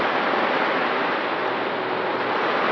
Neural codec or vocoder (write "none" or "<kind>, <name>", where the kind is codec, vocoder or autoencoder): none